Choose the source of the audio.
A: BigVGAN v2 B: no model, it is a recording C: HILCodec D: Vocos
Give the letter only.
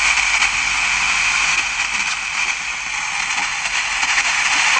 B